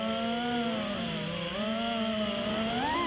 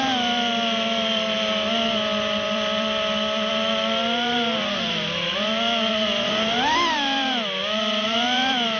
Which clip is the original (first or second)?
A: first